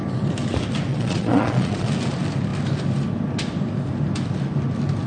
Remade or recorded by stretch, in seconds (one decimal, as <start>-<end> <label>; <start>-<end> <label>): 0.0-0.9 recorded; 0.9-1.9 remade; 1.9-5.1 recorded